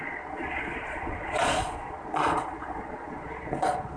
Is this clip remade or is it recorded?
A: remade